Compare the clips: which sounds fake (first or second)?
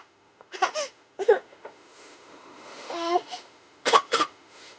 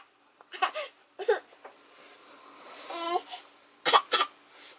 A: first